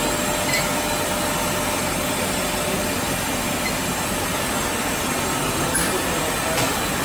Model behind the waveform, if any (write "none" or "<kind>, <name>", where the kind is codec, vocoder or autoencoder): none